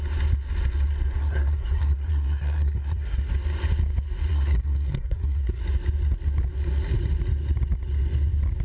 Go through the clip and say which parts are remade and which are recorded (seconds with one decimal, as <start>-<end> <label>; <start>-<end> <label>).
0.0-1.2 recorded; 1.2-3.3 remade; 3.3-4.3 recorded; 4.3-5.6 remade; 5.6-8.6 recorded